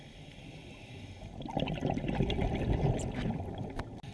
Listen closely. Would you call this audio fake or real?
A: real